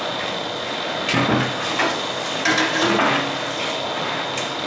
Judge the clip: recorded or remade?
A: recorded